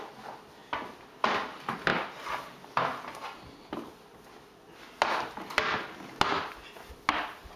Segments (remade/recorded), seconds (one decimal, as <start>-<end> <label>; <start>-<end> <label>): 0.0-7.6 recorded